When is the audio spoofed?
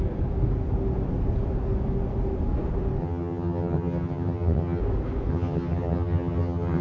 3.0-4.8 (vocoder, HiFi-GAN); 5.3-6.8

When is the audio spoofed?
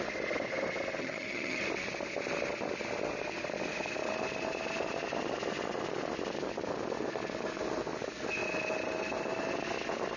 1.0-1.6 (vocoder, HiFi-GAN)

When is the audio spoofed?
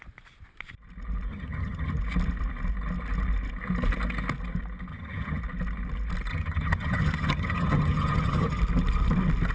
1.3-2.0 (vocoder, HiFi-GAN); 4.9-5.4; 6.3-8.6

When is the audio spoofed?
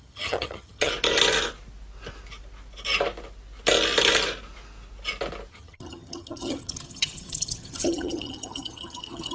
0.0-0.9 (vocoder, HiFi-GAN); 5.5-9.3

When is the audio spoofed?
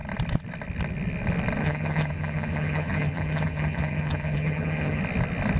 1.6-5.0 (vocoder, HiFi-GAN)